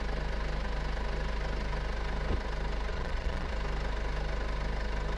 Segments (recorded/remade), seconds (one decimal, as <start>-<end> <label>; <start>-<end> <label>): 0.0-2.9 recorded; 2.9-3.5 remade; 3.5-5.2 recorded